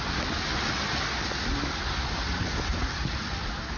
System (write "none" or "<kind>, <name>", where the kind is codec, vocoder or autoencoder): none